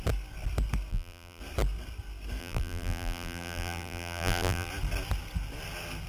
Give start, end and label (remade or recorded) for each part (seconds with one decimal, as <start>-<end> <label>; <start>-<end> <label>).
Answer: 0.0-0.9 recorded; 0.9-1.4 remade; 1.4-2.4 recorded; 2.4-4.7 remade; 4.7-6.1 recorded